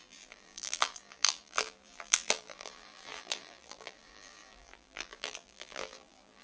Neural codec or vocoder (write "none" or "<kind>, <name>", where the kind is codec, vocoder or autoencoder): vocoder, BigVGAN v2